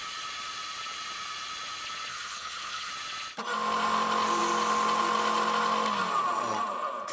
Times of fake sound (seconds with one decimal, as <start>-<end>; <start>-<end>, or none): 2.1-2.9